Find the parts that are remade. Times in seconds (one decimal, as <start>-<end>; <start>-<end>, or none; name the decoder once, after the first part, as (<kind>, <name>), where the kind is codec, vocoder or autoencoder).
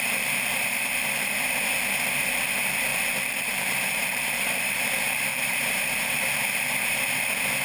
0.5-1.4 (vocoder, BigVGAN v2); 2.9-4.8; 5.3-6.0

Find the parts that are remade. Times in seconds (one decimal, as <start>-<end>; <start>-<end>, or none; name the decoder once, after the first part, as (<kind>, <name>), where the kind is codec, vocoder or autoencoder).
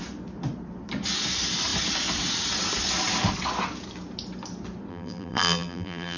4.9-6.2 (vocoder, BigVGAN v2)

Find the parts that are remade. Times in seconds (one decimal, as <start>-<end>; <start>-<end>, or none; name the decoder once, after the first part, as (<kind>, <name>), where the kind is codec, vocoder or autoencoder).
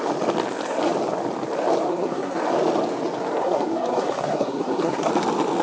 1.9-2.4 (codec, SNAC); 3.4-5.1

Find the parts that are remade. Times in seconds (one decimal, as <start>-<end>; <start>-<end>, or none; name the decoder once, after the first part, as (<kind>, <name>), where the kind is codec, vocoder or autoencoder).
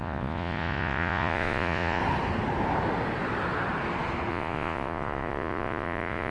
0.0-2.0 (vocoder, Vocos); 4.3-6.3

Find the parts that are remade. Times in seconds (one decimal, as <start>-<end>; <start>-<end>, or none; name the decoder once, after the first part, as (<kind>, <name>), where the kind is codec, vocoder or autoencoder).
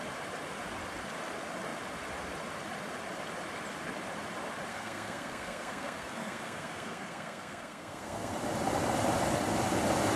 4.7-8.3 (codec, SNAC)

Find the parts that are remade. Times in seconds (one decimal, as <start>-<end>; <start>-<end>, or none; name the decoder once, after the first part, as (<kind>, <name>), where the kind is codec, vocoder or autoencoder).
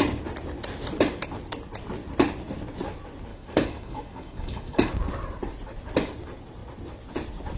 3.3-4.9 (codec, DAC)